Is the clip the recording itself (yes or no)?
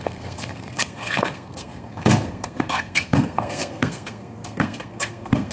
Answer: no